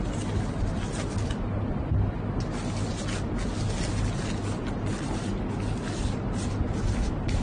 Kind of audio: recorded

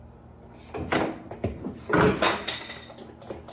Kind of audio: recorded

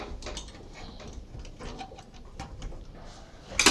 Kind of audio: recorded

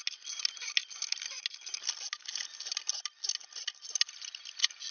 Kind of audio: recorded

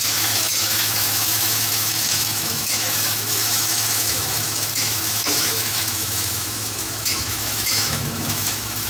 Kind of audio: remade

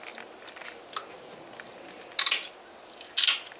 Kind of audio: recorded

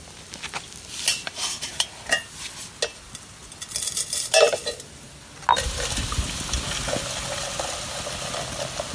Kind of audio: recorded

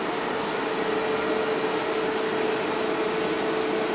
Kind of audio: recorded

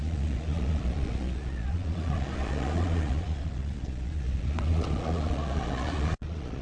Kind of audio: remade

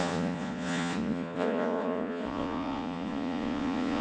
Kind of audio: remade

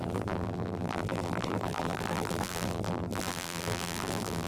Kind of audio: remade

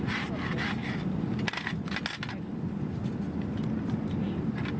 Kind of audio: recorded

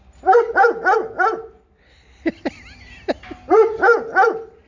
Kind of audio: recorded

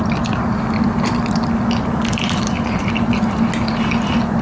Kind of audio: recorded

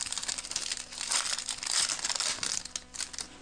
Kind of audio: recorded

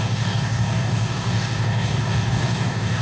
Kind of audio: remade